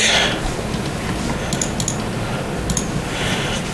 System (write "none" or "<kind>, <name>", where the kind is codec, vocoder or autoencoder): none